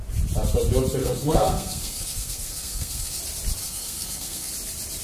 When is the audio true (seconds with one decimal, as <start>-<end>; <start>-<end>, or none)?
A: 0.0-1.0; 3.2-3.6; 4.5-5.0

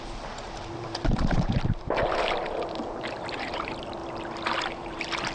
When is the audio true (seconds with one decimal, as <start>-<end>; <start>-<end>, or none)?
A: 4.0-4.6

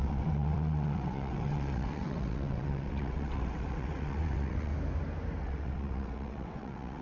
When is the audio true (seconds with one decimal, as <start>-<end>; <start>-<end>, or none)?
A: 4.7-5.4

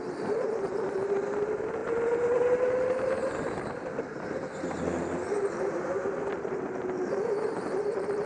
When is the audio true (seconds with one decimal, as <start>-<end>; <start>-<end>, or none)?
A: 0.0-8.3

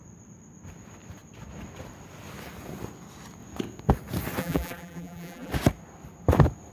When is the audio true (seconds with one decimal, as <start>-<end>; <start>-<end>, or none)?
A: 0.0-4.4; 5.5-6.7